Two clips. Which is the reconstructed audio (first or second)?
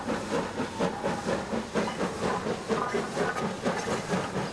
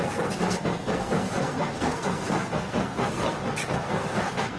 second